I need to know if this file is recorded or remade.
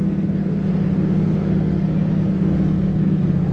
remade